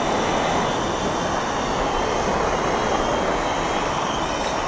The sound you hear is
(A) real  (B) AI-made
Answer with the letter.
A